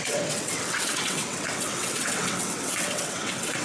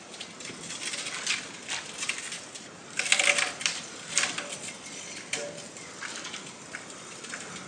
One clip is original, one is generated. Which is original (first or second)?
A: second